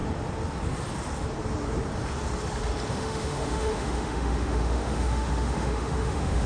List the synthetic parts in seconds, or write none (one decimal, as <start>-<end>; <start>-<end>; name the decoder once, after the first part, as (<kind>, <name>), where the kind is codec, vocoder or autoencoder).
2.9-6.5 (autoencoder, DAC-VAE)